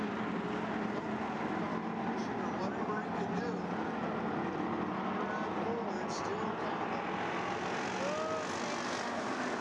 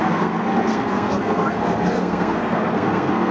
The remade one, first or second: second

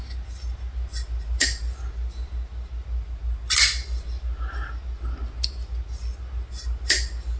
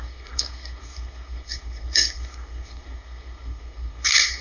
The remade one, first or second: second